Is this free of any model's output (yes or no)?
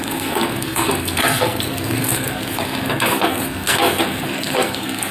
no